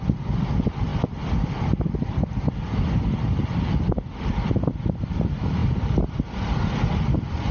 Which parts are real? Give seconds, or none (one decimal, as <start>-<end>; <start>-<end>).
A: 0.0-7.5